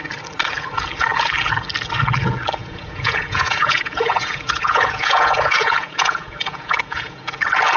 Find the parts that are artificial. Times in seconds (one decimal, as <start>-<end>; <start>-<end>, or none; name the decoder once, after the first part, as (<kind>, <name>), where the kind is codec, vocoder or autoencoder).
2.6-7.3 (vocoder, Vocos)